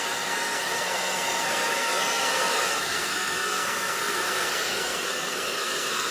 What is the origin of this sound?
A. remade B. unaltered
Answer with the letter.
A